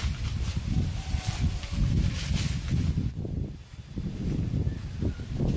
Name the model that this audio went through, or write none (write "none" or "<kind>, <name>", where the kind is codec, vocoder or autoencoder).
none